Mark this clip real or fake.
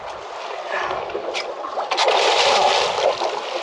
real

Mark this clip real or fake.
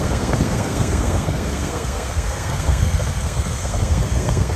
fake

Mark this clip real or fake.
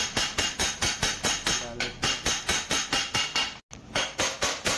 real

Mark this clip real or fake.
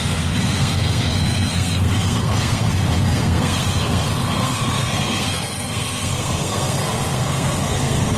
fake